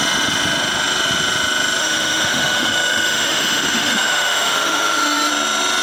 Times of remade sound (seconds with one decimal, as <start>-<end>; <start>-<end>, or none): 1.8-5.3